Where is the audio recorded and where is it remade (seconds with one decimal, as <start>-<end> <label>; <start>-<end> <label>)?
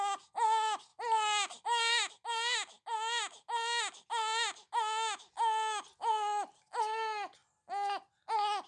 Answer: 0.0-8.7 recorded